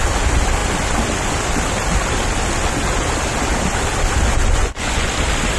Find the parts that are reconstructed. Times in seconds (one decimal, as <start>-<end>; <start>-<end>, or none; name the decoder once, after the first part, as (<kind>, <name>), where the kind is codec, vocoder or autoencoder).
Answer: 4.4-5.1 (vocoder, Vocos)